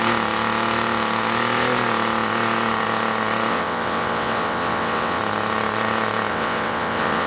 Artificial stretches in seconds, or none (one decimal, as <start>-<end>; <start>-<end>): 3.5-5.2; 6.3-7.3